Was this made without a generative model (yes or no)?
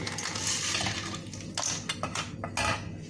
yes